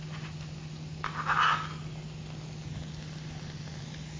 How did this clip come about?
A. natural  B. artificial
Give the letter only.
A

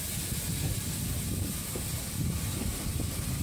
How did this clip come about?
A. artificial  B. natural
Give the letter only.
B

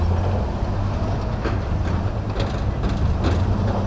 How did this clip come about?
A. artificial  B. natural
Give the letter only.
B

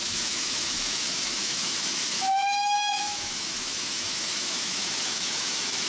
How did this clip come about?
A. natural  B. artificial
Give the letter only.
B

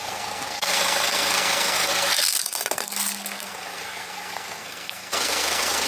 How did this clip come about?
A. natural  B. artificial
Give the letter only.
B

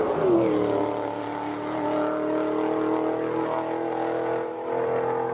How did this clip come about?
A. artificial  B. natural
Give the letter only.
B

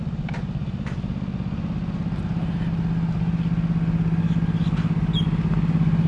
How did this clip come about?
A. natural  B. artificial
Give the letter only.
A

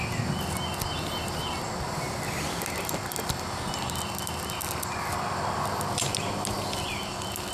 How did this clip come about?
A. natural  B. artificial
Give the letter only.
A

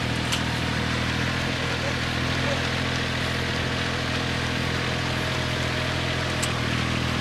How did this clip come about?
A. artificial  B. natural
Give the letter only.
B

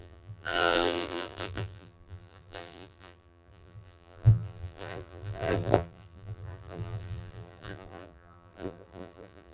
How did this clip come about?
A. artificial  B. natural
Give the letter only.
A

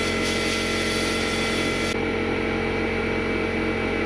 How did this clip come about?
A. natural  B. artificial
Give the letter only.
A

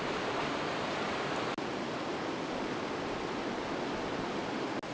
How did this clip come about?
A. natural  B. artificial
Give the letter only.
A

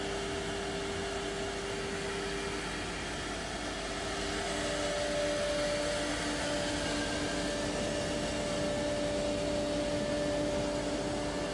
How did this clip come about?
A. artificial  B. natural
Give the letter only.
B